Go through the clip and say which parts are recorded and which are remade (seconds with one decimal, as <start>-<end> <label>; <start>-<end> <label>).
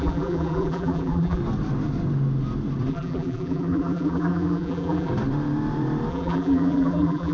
0.0-1.4 remade; 1.4-2.9 recorded; 2.9-5.1 remade; 5.1-6.1 recorded; 6.1-7.3 remade